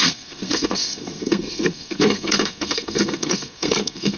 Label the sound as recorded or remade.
remade